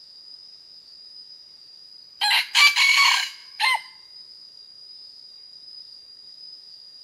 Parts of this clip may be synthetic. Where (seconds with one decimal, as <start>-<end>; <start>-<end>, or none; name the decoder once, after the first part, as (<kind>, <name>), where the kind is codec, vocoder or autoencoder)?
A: 0.0-1.9 (autoencoder, DAC-VAE); 2.9-7.0